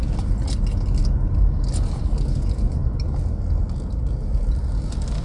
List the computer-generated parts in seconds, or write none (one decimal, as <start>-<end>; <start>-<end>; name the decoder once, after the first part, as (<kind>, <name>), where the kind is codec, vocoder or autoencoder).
none